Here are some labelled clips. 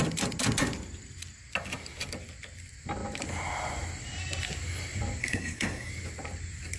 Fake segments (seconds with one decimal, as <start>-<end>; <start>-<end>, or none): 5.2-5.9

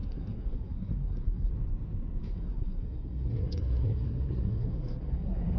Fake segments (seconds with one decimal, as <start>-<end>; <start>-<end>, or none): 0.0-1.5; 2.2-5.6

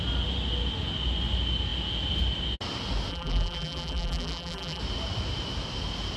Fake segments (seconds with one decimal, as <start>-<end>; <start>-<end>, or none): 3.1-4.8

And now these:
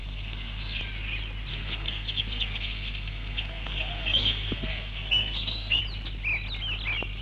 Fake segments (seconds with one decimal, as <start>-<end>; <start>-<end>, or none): 0.0-0.8; 1.5-5.8

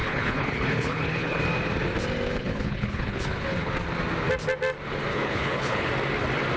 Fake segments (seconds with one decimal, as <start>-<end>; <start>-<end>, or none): 0.0-1.4; 2.4-3.7; 5.1-5.9

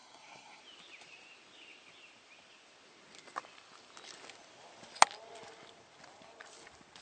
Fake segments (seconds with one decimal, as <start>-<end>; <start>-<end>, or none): 0.0-0.6

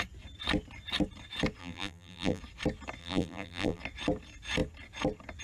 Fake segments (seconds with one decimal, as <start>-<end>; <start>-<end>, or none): 1.6-2.4; 3.0-3.8

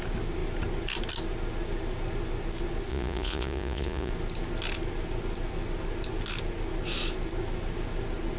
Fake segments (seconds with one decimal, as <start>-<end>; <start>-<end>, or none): 2.9-4.1